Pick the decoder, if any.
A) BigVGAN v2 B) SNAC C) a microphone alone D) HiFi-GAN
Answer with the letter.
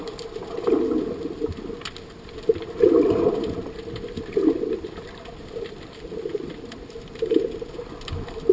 C